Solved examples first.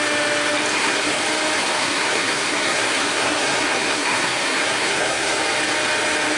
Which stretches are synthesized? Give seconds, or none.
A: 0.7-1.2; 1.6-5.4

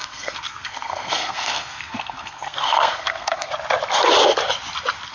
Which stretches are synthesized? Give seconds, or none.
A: 0.0-3.5

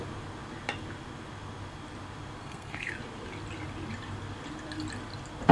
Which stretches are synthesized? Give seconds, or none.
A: 2.4-2.9

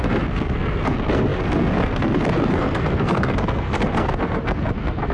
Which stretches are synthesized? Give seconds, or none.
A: 0.0-5.1

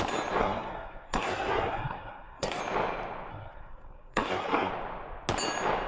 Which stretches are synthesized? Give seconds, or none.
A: 0.4-2.6; 3.3-4.7

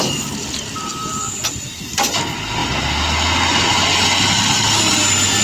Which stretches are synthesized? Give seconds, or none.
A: none

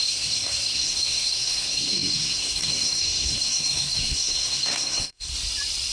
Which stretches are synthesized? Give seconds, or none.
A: 0.0-5.3